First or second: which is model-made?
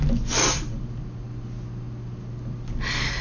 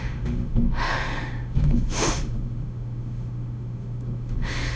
second